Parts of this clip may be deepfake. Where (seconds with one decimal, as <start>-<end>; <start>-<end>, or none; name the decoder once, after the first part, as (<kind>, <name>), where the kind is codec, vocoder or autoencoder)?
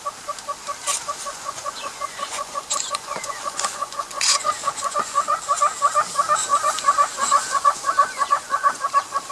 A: 1.3-5.4 (vocoder, Vocos); 6.5-8.8